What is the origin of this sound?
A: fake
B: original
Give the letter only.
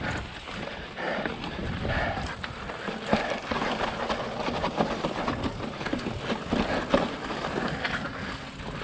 B